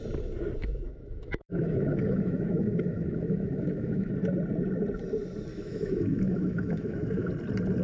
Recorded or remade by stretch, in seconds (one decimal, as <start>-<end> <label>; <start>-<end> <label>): 0.0-0.6 recorded; 0.6-4.1 remade; 4.1-5.5 recorded; 5.5-7.3 remade; 7.3-7.8 recorded